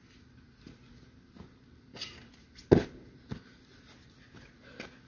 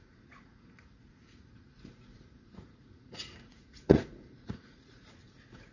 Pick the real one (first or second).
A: first